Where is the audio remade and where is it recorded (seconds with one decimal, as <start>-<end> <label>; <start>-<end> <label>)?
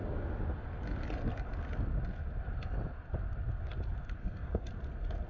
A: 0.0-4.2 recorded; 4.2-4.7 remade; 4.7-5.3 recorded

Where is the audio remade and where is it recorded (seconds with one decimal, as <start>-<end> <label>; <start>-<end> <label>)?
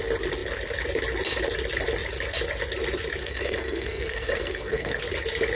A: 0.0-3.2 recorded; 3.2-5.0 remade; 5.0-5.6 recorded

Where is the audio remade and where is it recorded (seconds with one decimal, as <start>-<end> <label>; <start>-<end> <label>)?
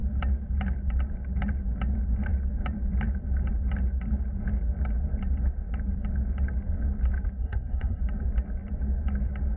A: 0.0-7.4 recorded; 7.4-8.0 remade; 8.0-9.6 recorded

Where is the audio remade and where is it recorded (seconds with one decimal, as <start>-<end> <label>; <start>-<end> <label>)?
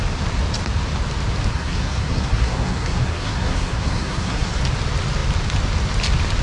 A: 0.0-1.5 recorded; 1.5-4.6 remade; 4.6-6.4 recorded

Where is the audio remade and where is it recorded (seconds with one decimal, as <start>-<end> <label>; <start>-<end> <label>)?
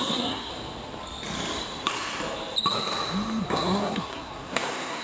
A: 0.0-0.5 remade; 0.5-3.5 recorded; 3.5-5.0 remade